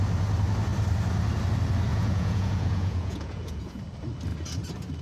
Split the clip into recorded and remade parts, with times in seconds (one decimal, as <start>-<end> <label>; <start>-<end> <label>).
0.0-1.9 recorded; 1.9-3.8 remade; 3.8-5.0 recorded